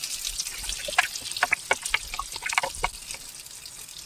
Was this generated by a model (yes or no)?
no